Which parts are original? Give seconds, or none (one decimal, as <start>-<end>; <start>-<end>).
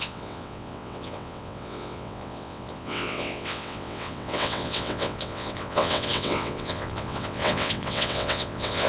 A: none